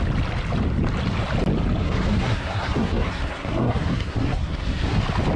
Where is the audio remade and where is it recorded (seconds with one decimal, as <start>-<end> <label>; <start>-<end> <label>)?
0.0-1.8 recorded; 1.8-5.0 remade; 5.0-5.4 recorded